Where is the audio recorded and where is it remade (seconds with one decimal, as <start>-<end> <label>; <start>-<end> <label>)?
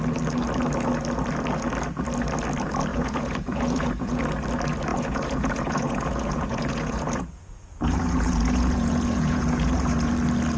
0.0-2.9 recorded; 2.9-4.2 remade; 4.2-4.9 recorded; 4.9-10.1 remade; 10.1-10.6 recorded